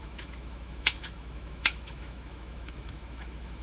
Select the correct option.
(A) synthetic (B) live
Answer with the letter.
A